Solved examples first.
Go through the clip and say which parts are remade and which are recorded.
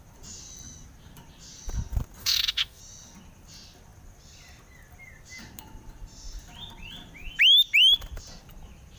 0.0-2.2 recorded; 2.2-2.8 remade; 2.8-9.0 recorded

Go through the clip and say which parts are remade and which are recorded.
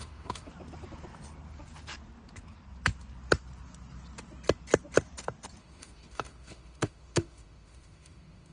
0.0-0.5 remade; 0.5-5.6 recorded; 5.6-8.5 remade